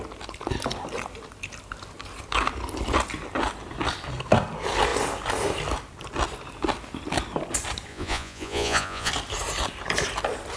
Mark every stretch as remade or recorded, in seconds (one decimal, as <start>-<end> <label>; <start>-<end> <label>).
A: 0.0-7.9 recorded; 7.9-9.1 remade; 9.1-10.6 recorded